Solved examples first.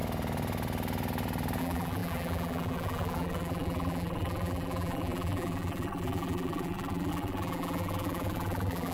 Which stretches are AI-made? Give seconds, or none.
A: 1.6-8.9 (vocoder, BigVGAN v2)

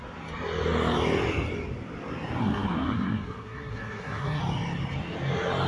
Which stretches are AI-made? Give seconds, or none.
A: 2.4-4.4 (codec, SNAC)

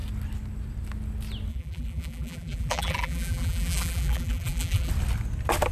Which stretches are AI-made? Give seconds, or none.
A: 1.5-4.9 (vocoder, BigVGAN v2)

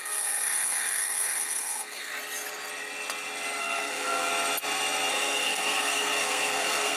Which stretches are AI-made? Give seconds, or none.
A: 0.0-2.1 (codec, SNAC); 3.6-4.3; 5.1-7.0

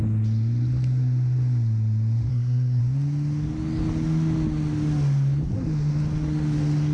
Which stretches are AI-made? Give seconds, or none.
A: 2.3-2.8 (codec, SNAC)

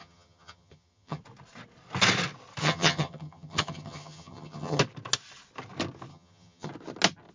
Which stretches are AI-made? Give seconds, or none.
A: 0.0-1.2 (vocoder, HiFi-GAN); 2.6-4.8; 6.1-6.7

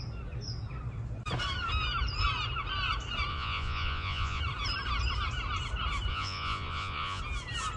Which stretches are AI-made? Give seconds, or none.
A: 3.3-4.4 (vocoder, Vocos); 6.1-7.2

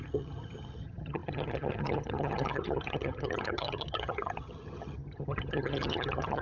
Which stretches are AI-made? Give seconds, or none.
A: 0.0-6.4 (vocoder, HiFi-GAN)